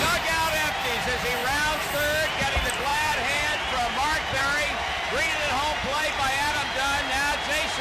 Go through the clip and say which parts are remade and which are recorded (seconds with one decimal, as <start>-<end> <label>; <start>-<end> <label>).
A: 0.0-2.9 recorded; 2.9-4.4 remade; 4.4-5.9 recorded; 5.9-6.6 remade; 6.6-7.8 recorded